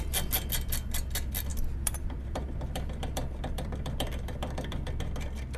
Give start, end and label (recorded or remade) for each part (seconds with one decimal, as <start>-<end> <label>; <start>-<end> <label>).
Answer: 0.0-1.5 recorded; 1.5-4.9 remade; 4.9-5.6 recorded

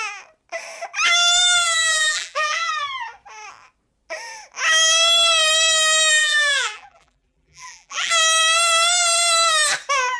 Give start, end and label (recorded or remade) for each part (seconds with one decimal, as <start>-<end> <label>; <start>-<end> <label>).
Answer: 0.0-1.6 recorded; 1.6-2.7 remade; 2.7-6.2 recorded; 6.2-8.1 remade; 8.1-10.2 recorded

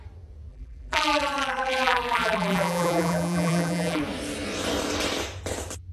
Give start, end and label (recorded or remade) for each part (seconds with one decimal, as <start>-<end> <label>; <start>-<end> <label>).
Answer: 0.0-0.5 recorded; 0.5-4.0 remade; 4.0-5.9 recorded

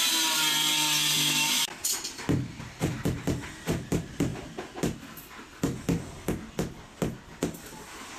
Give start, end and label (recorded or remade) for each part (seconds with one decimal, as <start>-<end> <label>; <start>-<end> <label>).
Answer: 0.0-1.8 recorded; 1.8-2.9 remade; 2.9-8.2 recorded

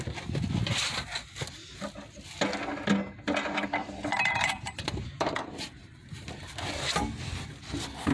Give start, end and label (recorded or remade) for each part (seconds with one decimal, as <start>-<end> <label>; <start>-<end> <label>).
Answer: 0.0-4.1 recorded; 4.1-6.3 remade; 6.3-8.1 recorded